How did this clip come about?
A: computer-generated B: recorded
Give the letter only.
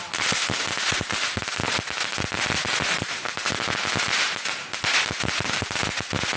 B